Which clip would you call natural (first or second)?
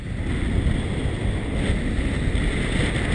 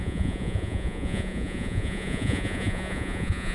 first